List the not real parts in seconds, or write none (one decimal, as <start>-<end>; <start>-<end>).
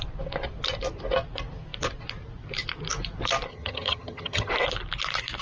3.5-4.5